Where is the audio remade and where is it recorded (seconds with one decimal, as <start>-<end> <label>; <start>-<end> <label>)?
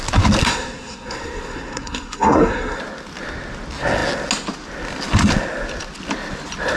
0.0-0.4 recorded; 0.4-2.8 remade; 2.8-6.8 recorded